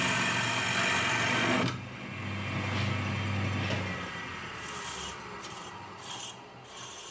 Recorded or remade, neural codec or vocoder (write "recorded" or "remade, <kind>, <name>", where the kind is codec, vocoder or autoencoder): recorded